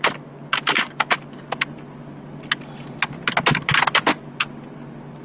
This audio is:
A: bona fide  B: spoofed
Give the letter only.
A